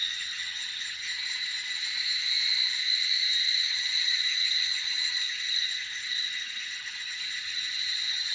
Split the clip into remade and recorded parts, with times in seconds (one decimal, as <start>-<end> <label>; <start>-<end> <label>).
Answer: 0.0-1.5 remade; 1.5-3.4 recorded; 3.4-8.3 remade